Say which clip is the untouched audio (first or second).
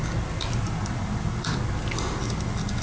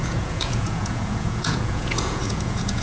first